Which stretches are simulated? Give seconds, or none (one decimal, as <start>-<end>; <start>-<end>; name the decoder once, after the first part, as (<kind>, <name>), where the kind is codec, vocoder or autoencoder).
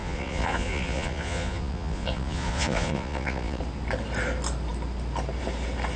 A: 0.0-3.6 (vocoder, Vocos)